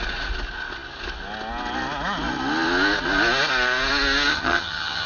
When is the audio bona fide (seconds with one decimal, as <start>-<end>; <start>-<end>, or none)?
0.0-4.3